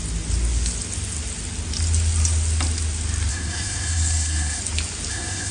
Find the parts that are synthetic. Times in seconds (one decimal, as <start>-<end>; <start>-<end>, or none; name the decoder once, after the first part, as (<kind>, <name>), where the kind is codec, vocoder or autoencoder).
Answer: 3.3-4.6 (codec, SNAC); 5.1-5.5